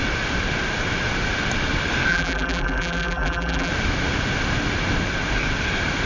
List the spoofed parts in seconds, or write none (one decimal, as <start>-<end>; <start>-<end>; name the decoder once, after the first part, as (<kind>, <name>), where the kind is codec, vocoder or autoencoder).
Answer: 2.1-3.7 (vocoder, BigVGAN v2)